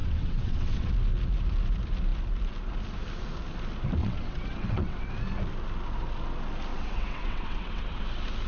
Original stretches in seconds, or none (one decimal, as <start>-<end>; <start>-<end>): 0.9-4.0; 5.1-6.7; 8.0-8.5